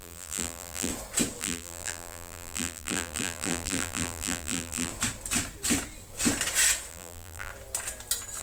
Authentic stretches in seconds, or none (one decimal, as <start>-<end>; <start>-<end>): 0.9-1.4; 4.9-6.9; 7.5-8.4